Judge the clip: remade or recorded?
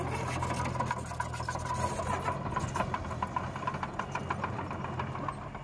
recorded